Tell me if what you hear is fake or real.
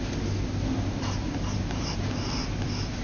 real